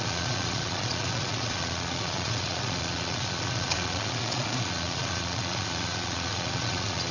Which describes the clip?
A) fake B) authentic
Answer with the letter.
A